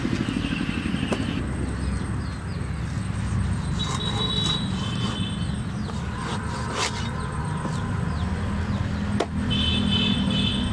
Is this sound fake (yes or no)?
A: no